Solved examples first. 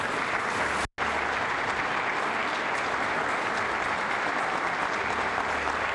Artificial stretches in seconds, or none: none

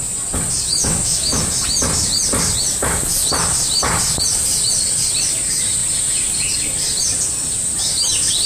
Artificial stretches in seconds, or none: 0.7-1.4 (autoencoder, DAC-VAE)

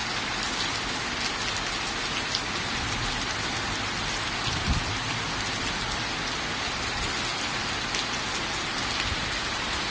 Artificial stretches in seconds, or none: none

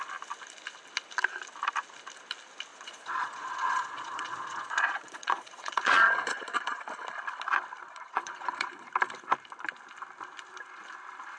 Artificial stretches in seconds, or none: 2.7-6.8 (vocoder, Vocos); 7.8-8.9

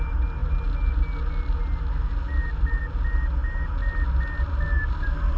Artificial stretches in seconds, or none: none

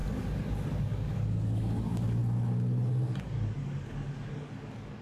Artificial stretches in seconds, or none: 0.8-2.2 (codec, DAC); 3.2-5.0

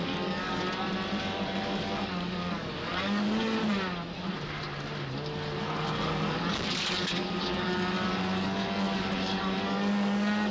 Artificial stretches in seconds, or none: 0.0-0.6 (codec, DAC); 1.2-3.6; 5.6-10.5

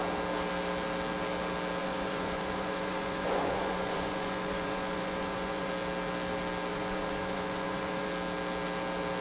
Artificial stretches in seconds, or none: 1.8-5.7 (vocoder, Vocos); 6.7-8.1